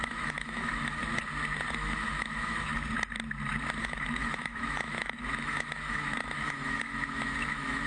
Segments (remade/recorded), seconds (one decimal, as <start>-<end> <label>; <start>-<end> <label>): 0.0-1.0 remade; 1.0-1.7 recorded; 1.7-2.7 remade; 2.7-3.8 recorded; 3.8-7.9 remade